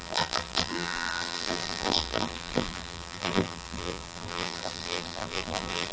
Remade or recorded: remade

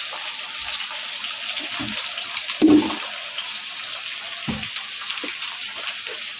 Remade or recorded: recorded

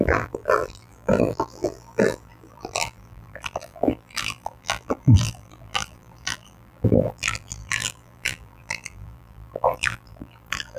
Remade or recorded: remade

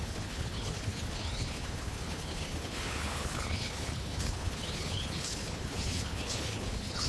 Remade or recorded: remade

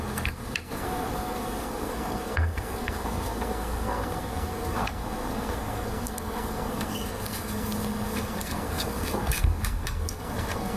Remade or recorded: remade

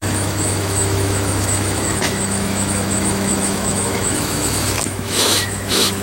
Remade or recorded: remade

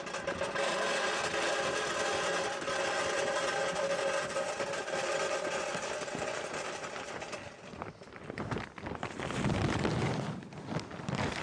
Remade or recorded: recorded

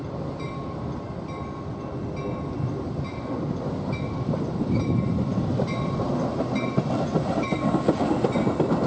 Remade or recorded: recorded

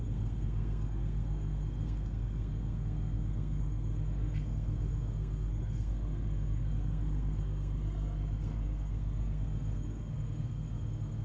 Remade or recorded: remade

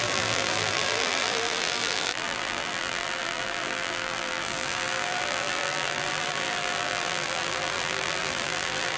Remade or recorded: remade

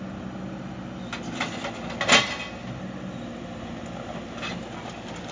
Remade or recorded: recorded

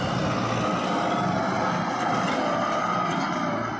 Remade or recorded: recorded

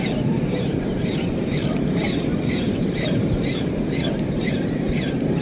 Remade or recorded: remade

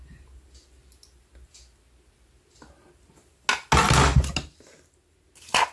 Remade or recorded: recorded